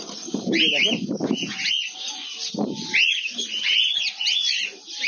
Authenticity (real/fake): real